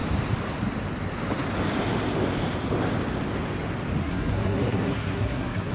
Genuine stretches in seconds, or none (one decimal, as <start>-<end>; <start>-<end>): 0.0-4.0